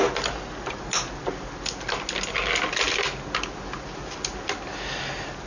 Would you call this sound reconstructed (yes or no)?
no